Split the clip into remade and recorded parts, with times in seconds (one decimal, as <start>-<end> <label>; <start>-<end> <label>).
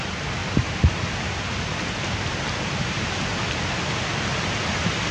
0.0-5.1 recorded